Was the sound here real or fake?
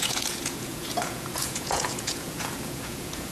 fake